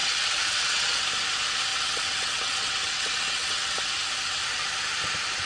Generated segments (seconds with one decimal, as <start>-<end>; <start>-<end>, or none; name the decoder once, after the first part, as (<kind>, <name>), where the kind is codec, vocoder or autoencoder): 0.0-1.0 (vocoder, WaveNeXt); 1.7-3.8